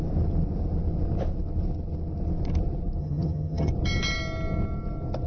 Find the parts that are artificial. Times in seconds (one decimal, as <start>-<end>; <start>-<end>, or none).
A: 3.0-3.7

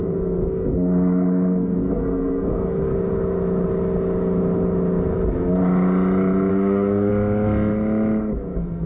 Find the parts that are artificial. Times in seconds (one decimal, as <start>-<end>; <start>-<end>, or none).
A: 0.0-2.9; 6.5-7.1; 8.5-8.9

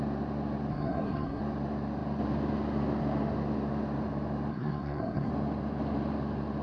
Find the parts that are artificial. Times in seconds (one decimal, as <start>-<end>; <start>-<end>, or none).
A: 0.7-1.4; 4.5-5.3

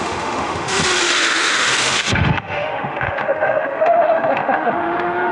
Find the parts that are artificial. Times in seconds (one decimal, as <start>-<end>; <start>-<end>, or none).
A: 0.0-5.3

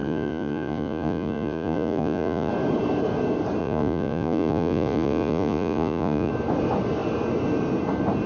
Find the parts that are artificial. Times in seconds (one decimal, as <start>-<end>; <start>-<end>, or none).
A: 0.0-2.5; 3.6-6.3

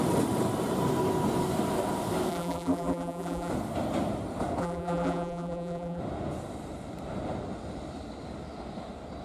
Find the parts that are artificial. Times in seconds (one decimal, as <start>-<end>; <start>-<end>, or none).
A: 2.3-3.5; 4.6-6.0

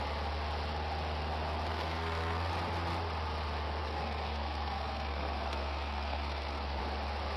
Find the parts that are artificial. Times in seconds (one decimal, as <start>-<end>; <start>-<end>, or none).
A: 1.7-2.5; 3.8-6.8

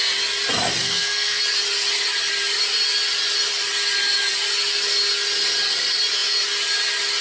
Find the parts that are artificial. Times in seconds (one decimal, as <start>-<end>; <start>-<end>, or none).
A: 0.8-1.4